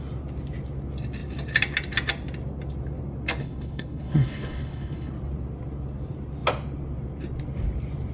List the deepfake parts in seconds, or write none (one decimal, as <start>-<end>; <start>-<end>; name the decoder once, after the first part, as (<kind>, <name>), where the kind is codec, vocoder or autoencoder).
3.4-5.1 (codec, HILCodec)

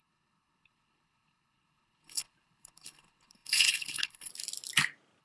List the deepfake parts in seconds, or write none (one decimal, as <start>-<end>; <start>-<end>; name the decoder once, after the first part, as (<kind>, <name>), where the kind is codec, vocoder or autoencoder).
0.0-4.3 (codec, HILCodec)

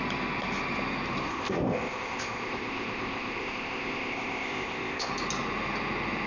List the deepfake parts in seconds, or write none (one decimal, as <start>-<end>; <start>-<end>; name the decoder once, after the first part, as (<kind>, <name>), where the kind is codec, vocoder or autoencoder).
1.3-5.1 (codec, ZipCodec)

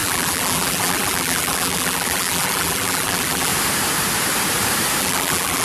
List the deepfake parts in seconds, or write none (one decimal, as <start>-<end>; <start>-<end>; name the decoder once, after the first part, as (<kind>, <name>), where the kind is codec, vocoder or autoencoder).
0.0-3.5 (vocoder, BigVGAN v2); 5.0-5.6